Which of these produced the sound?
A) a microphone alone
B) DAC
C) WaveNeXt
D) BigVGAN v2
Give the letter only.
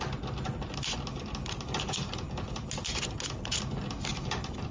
A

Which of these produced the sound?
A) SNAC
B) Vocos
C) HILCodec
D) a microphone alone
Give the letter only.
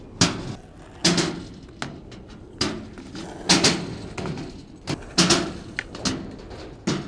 D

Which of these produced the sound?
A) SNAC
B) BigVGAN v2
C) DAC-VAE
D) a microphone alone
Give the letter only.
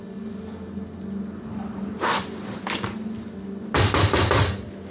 D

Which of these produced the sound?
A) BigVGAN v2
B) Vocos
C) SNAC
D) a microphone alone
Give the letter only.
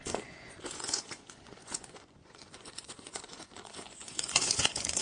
B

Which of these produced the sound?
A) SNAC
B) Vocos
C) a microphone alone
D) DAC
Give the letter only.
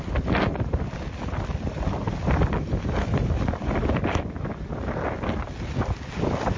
C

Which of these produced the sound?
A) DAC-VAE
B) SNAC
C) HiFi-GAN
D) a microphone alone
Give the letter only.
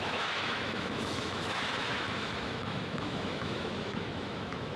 A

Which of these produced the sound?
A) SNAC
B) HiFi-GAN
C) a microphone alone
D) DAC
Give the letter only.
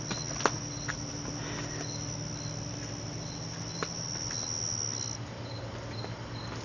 C